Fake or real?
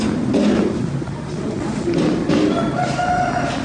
real